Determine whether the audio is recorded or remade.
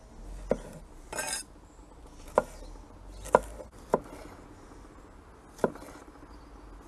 recorded